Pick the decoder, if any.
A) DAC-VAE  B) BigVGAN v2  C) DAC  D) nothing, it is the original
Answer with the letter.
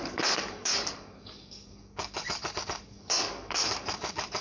C